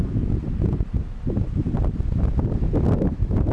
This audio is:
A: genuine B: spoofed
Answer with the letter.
A